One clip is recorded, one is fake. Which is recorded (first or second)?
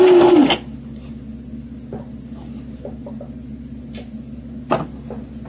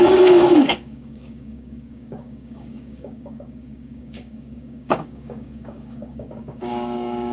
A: first